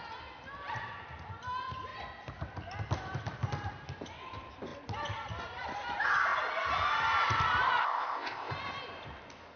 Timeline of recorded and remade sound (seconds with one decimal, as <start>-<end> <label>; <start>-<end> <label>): 0.0-7.8 recorded; 7.8-8.5 remade; 8.5-9.6 recorded